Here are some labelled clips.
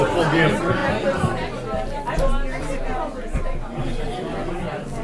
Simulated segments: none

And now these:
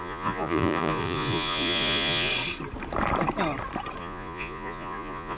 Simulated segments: 0.0-2.3 (vocoder, Vocos); 4.0-5.4

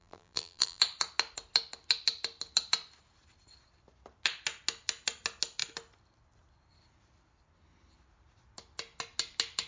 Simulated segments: 0.0-0.8 (vocoder, BigVGAN v2)

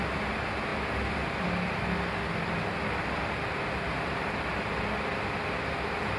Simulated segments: none

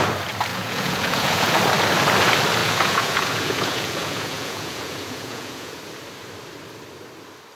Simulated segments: 0.5-1.6 (vocoder, Vocos); 2.6-5.8

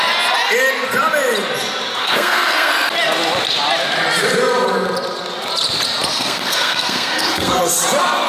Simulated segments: 2.0-2.7 (codec, SNAC); 6.1-7.6